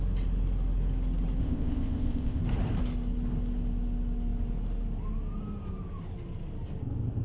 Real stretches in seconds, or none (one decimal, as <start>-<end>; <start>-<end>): 0.0-1.4; 2.4-7.2